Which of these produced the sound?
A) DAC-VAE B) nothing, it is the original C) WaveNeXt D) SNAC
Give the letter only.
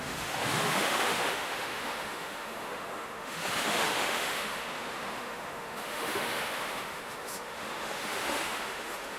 A